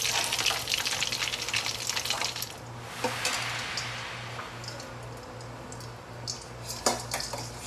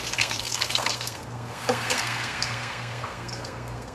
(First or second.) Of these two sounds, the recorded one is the first